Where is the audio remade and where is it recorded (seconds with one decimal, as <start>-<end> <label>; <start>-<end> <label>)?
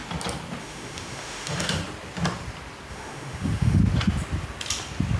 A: 0.0-0.6 recorded; 0.6-1.8 remade; 1.8-2.9 recorded; 2.9-3.8 remade; 3.8-5.2 recorded